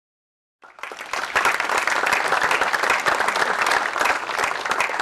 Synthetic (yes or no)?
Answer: no